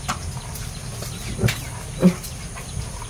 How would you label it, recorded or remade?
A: recorded